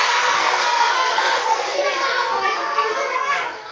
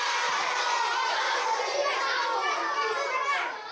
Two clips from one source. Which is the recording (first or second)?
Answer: second